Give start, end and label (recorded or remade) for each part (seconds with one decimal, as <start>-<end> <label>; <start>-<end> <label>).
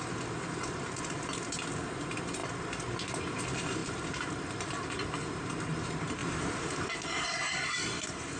0.0-6.2 recorded; 6.2-6.9 remade; 6.9-8.4 recorded